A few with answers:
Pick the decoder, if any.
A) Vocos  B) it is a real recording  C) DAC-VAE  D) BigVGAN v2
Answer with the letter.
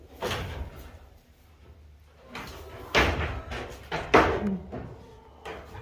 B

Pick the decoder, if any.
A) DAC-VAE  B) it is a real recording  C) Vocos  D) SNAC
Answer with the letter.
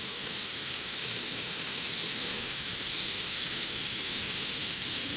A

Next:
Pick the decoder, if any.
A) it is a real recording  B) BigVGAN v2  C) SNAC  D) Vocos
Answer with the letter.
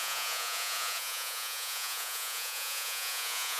D